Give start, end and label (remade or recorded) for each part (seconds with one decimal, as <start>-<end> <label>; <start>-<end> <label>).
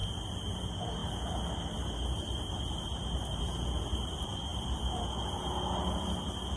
0.0-6.6 recorded